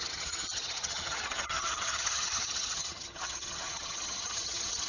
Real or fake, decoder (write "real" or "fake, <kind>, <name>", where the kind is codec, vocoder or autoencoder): fake, vocoder, HiFi-GAN